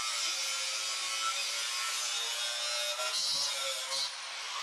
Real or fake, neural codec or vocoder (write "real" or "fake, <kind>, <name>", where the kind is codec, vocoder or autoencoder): real